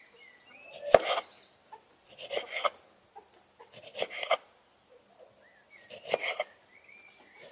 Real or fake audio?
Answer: real